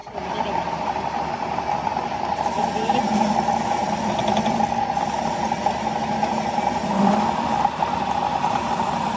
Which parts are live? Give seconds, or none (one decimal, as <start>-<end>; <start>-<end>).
0.0-9.2